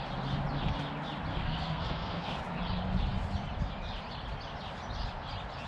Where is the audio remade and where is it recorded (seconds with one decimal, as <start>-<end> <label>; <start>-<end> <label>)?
0.0-1.3 recorded; 1.3-2.4 remade; 2.4-5.7 recorded